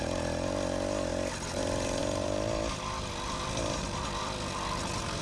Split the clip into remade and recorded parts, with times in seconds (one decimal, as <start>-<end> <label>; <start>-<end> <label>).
0.0-1.1 recorded; 1.1-1.6 remade; 1.6-2.0 recorded; 2.0-5.2 remade